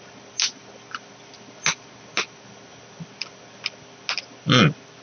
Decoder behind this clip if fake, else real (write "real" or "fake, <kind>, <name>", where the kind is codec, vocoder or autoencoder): real